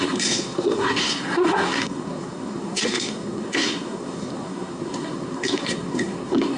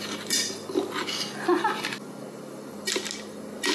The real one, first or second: second